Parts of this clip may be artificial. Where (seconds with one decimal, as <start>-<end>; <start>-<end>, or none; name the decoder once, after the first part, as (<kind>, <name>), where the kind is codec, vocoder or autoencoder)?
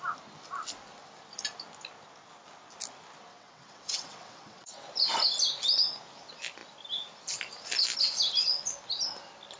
3.3-4.7 (vocoder, WaveNeXt)